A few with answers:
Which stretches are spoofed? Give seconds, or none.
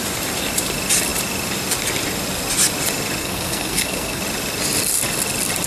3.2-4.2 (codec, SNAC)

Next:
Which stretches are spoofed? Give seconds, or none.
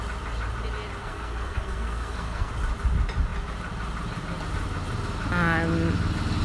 1.0-2.5 (codec, SNAC)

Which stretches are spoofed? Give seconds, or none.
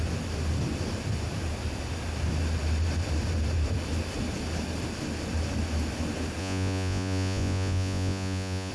6.4-8.7 (vocoder, Vocos)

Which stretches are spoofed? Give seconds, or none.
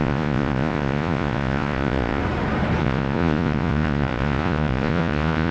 0.0-2.2 (vocoder, Vocos); 2.8-5.5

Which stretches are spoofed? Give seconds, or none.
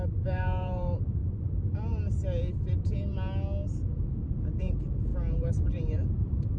0.0-1.2 (vocoder, BigVGAN v2); 4.6-5.1; 5.7-6.6